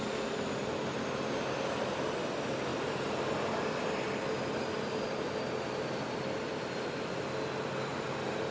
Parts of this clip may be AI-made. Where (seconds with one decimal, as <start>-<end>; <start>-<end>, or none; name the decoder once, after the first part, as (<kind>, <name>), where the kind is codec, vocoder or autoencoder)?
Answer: 2.7-7.2 (vocoder, BigVGAN v2); 7.9-8.5

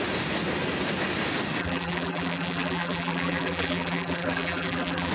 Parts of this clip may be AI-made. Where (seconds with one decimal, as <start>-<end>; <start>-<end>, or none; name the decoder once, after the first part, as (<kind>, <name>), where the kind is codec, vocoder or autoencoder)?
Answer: 1.6-5.1 (vocoder, BigVGAN v2)